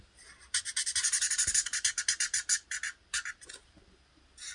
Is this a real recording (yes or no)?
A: yes